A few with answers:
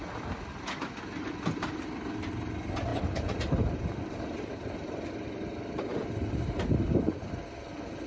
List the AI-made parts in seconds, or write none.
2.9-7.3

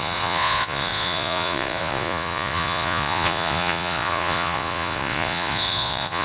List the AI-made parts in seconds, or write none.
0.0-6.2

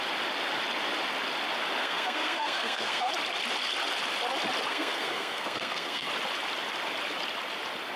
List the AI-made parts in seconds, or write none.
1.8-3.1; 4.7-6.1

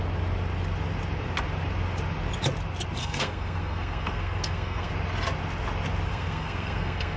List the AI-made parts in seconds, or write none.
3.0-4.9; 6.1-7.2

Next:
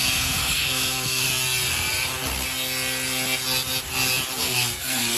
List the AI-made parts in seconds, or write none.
0.0-1.3; 4.4-5.2

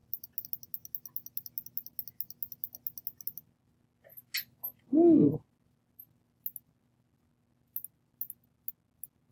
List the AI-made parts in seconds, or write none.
none

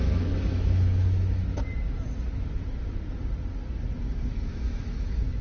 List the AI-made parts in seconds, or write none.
0.0-1.4; 4.2-5.4